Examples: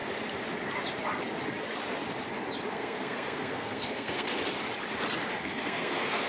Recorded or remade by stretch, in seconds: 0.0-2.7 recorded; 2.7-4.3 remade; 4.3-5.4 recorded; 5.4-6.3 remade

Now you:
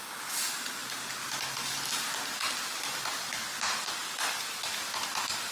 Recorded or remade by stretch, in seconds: 0.0-5.5 recorded

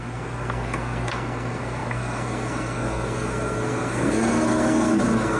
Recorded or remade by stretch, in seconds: 0.0-5.4 remade

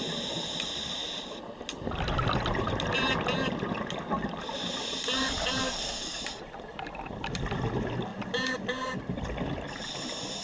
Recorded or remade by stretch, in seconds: 0.0-5.6 recorded; 5.6-6.2 remade; 6.2-10.4 recorded

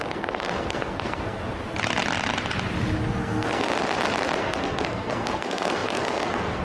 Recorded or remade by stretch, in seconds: 0.0-1.4 remade; 1.4-3.2 recorded; 3.2-3.7 remade; 3.7-4.4 recorded; 4.4-6.6 remade

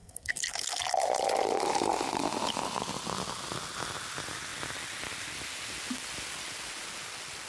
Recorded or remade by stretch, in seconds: 0.0-0.8 remade; 0.8-7.5 recorded

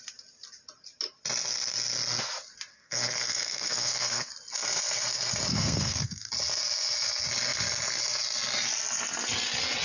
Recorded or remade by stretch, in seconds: 0.0-2.7 recorded; 2.7-4.3 remade; 4.3-5.5 recorded; 5.5-6.3 remade; 6.3-9.8 recorded